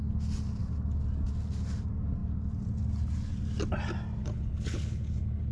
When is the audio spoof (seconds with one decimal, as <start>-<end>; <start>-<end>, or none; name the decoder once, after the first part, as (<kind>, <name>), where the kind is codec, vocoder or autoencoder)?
4.2-5.5 (codec, HILCodec)